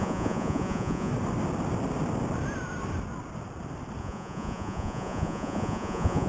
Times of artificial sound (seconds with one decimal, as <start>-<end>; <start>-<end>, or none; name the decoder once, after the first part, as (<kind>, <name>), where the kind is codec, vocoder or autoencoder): 0.0-1.1 (vocoder, Vocos); 4.0-6.3